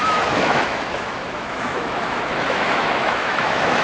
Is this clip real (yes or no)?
no